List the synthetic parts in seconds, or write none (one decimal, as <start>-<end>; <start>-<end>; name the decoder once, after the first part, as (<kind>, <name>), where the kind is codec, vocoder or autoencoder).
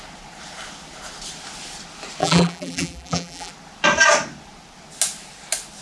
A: 2.2-3.5 (vocoder, BigVGAN v2)